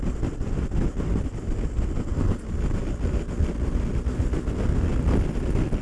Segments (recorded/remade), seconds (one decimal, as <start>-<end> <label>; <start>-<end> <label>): 0.0-5.8 recorded